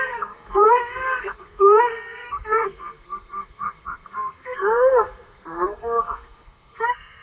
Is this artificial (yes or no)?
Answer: yes